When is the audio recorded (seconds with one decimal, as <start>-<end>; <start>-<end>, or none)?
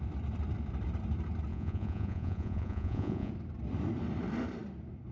0.0-1.5; 3.3-5.1